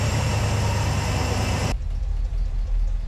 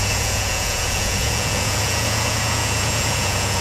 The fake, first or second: second